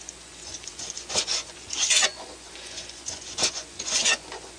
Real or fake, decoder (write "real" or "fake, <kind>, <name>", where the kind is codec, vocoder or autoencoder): fake, vocoder, Vocos